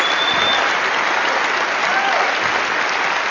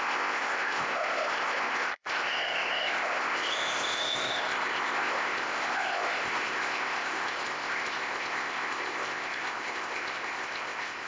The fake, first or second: second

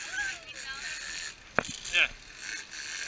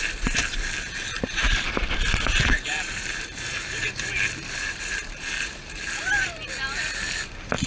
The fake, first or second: second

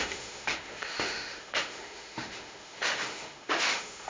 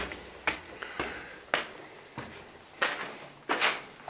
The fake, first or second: first